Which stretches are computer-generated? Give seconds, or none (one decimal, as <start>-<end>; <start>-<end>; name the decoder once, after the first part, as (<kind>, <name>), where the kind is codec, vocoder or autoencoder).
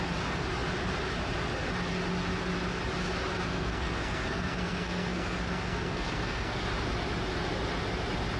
3.3-6.6 (codec, SNAC)